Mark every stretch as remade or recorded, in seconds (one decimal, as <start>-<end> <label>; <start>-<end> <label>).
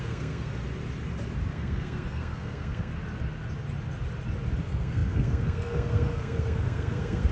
0.0-0.6 remade; 0.6-1.5 recorded; 1.5-2.9 remade; 2.9-4.6 recorded; 4.6-7.3 remade